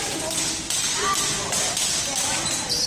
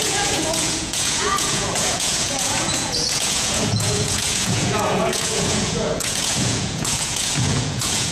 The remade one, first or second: second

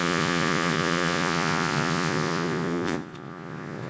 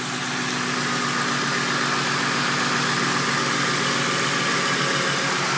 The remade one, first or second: first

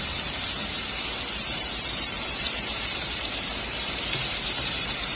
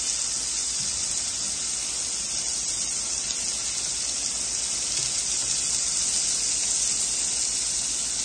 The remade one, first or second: first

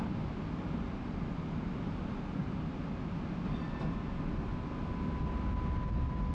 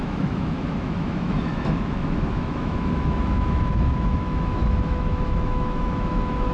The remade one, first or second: second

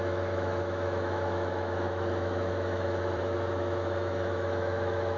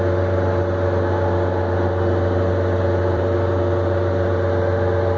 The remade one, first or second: first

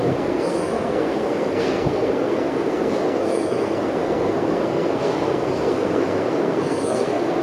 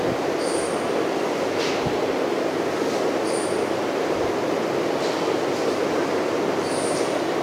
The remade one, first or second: first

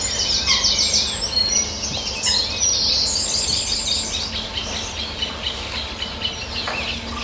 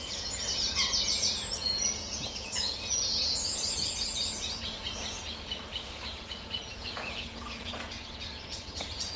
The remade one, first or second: second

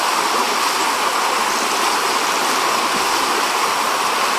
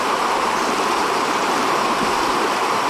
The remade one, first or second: second